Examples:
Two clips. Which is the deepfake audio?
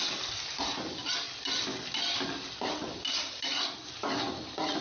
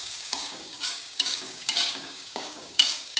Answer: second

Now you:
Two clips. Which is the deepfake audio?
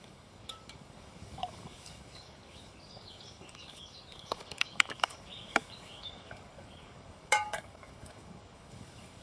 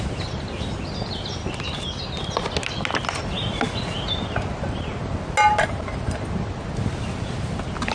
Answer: first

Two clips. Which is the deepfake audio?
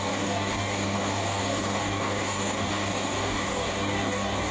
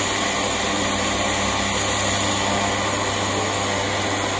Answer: first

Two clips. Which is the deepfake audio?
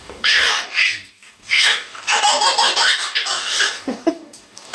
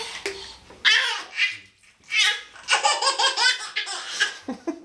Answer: first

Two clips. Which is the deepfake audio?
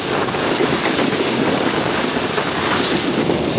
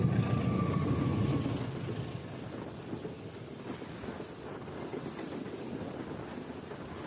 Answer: first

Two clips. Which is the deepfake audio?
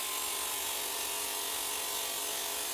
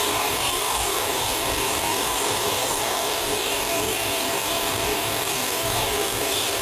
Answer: second